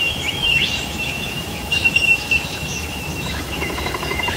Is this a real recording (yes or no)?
no